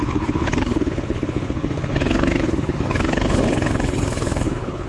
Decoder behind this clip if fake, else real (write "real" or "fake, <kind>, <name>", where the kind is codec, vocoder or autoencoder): fake, codec, HILCodec